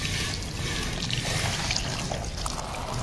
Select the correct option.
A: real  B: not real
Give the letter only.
A